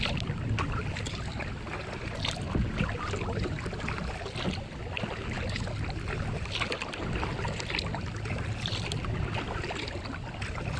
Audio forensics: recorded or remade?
recorded